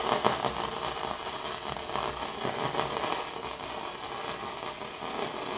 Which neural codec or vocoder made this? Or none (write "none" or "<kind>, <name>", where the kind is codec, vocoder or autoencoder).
none